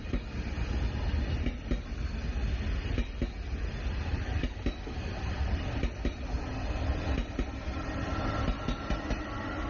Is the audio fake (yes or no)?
no